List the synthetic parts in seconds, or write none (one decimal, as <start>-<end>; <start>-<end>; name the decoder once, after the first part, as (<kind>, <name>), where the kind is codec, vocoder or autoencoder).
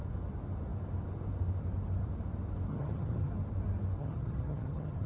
2.7-3.3 (vocoder, HiFi-GAN); 4.0-5.1